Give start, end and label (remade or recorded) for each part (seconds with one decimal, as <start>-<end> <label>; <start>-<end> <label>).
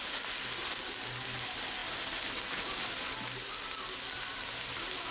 0.0-5.1 recorded